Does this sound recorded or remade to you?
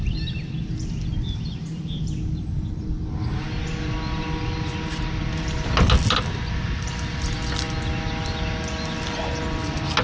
recorded